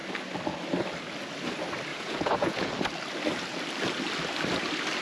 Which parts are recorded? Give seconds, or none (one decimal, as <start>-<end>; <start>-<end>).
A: 0.0-1.9; 2.7-5.0